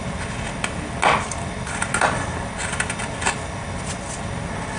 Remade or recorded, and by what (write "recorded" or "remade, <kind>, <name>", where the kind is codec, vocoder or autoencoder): recorded